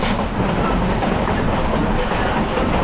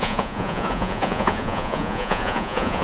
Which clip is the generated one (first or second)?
second